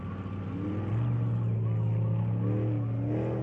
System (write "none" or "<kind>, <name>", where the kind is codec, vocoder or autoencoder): none